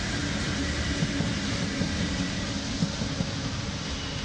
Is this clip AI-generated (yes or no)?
no